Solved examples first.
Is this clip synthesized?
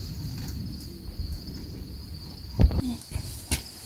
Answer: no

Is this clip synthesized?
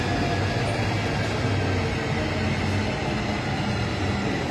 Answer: no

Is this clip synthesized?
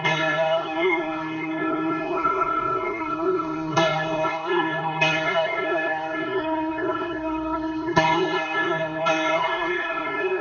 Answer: yes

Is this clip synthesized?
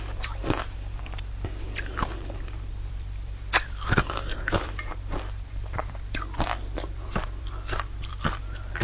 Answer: yes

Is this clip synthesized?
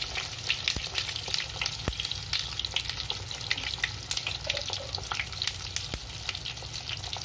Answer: no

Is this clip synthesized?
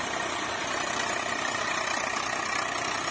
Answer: no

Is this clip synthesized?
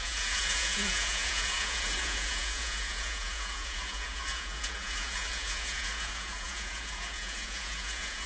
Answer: yes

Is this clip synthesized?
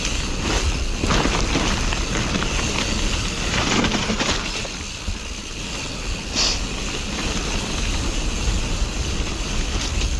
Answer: no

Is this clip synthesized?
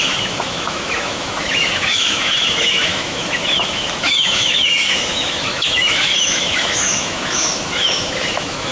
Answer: yes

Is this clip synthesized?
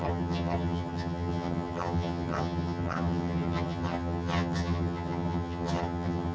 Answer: yes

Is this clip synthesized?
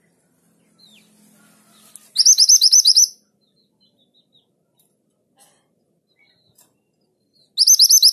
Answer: no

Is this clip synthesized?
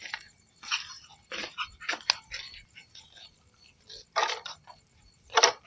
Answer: no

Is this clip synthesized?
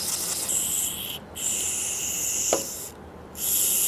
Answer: no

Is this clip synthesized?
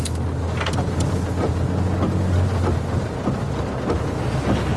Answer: no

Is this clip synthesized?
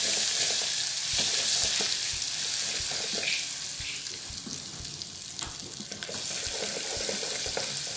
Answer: no